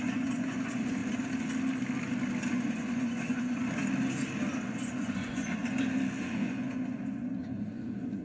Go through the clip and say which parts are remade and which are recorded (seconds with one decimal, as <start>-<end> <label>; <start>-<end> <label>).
0.0-1.0 remade; 1.0-2.5 recorded; 2.5-3.8 remade; 3.8-4.7 recorded; 4.7-5.6 remade; 5.6-6.2 recorded; 6.2-8.2 remade